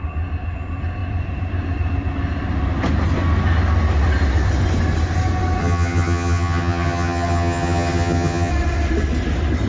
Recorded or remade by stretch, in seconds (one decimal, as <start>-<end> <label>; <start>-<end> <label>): 0.0-5.6 recorded; 5.6-8.5 remade; 8.5-9.7 recorded